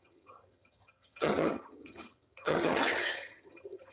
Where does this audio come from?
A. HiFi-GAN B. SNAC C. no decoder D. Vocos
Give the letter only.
A